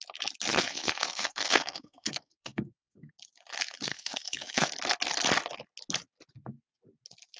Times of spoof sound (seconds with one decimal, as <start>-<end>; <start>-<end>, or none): 0.5-3.1; 3.9-4.7